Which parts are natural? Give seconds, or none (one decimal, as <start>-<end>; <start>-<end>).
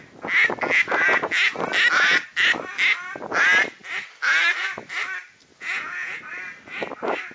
0.0-5.5; 6.2-7.3